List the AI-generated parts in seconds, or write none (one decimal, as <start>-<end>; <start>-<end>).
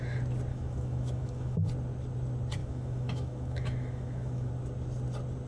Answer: 0.5-1.7; 2.6-4.5